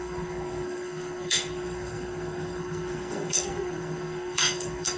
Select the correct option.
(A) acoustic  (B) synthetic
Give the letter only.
B